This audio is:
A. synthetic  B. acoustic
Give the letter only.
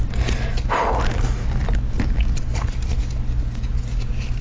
B